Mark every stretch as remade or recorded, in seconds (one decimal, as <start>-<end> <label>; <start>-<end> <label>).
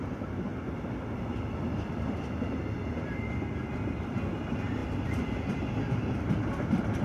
0.0-7.0 recorded